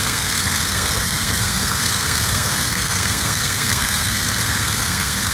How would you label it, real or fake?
fake